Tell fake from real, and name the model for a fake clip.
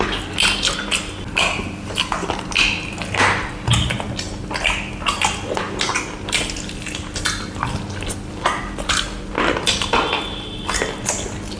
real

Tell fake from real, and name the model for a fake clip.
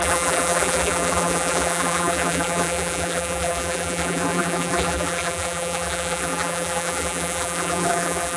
fake, vocoder, BigVGAN v2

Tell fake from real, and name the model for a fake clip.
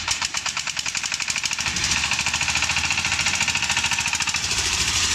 fake, vocoder, BigVGAN v2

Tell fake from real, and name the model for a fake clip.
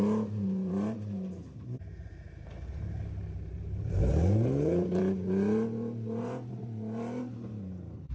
fake, vocoder, BigVGAN v2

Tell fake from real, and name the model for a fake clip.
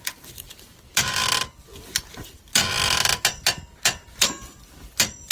fake, vocoder, BigVGAN v2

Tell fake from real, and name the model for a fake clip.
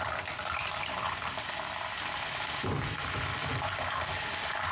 fake, vocoder, BigVGAN v2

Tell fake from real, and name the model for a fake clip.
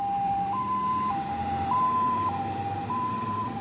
fake, vocoder, BigVGAN v2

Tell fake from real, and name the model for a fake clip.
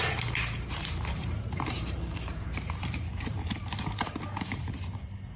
fake, vocoder, BigVGAN v2